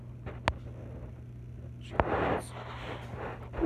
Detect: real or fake real